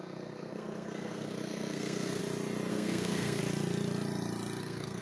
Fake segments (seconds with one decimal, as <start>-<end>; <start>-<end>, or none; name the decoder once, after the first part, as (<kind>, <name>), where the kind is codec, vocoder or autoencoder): 0.0-2.2 (codec, SNAC); 2.7-3.4; 4.6-5.0